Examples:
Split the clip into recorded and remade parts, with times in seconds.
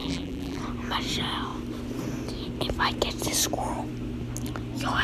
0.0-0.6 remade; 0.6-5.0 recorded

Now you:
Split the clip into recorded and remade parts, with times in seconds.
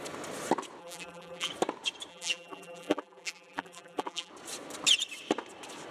0.0-0.8 recorded; 0.8-1.5 remade; 1.5-2.1 recorded; 2.1-4.3 remade; 4.3-5.9 recorded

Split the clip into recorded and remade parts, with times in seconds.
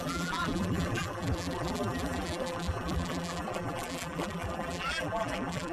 0.0-5.7 remade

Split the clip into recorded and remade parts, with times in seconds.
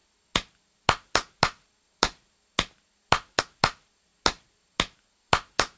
0.0-5.8 recorded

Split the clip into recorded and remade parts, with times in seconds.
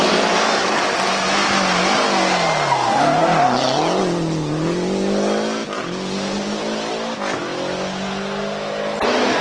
0.0-9.4 recorded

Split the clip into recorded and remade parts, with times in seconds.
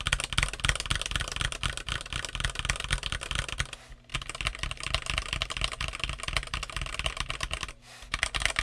0.0-8.6 recorded